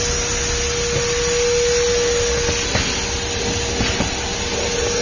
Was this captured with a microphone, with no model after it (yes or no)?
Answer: yes